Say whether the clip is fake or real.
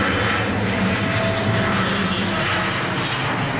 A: real